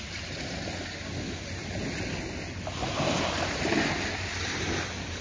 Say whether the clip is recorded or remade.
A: recorded